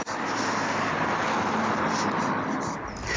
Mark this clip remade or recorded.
recorded